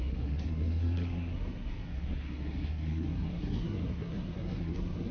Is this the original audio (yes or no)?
no